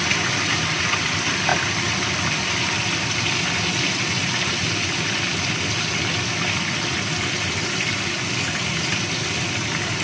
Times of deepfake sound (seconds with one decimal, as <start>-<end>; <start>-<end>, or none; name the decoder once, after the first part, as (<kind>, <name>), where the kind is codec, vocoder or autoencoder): none